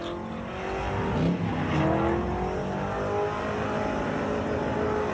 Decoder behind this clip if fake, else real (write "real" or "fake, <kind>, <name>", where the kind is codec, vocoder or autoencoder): real